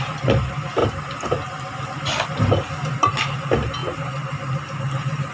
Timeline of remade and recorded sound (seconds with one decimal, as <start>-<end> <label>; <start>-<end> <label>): 0.0-5.3 remade